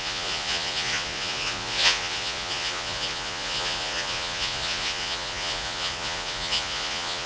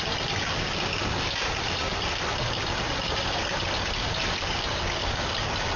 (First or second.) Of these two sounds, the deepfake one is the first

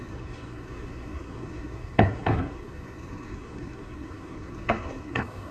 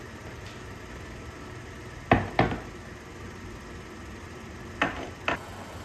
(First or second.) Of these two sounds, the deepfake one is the first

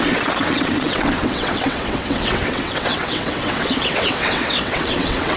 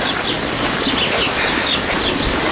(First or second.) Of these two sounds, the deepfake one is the first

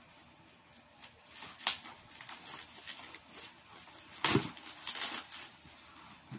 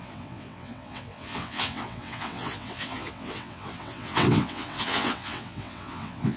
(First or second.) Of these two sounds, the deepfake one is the second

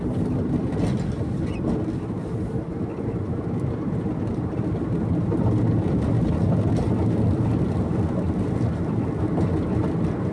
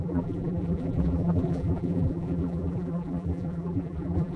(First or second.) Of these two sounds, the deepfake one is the second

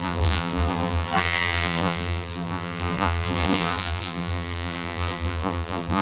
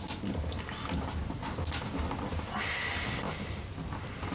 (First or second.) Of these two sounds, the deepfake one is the first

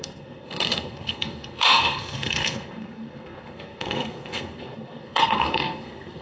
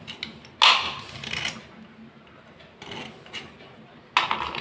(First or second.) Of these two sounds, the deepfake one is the first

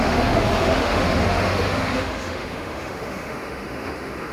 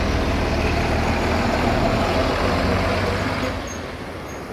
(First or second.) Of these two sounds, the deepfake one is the first